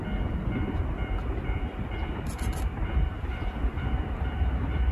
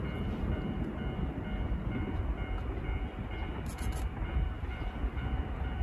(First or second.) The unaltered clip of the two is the second